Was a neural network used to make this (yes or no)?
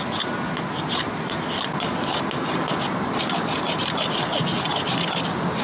no